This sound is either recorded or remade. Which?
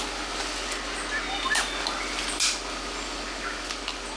recorded